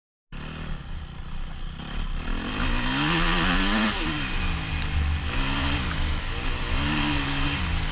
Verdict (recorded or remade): recorded